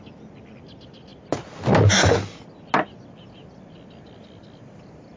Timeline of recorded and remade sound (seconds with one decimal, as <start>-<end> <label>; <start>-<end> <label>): 0.0-5.2 recorded